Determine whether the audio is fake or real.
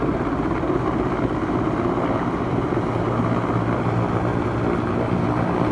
real